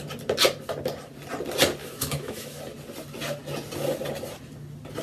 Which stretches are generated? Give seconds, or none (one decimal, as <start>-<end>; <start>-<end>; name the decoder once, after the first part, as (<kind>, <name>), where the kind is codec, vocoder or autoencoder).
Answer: 1.8-2.6 (autoencoder, DAC-VAE)